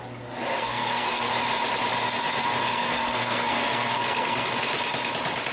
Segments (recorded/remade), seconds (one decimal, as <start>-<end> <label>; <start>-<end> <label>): 0.0-0.5 recorded; 0.5-1.3 remade; 1.3-2.6 recorded; 2.6-4.5 remade; 4.5-5.5 recorded